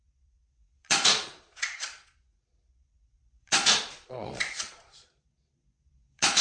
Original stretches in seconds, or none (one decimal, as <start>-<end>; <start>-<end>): none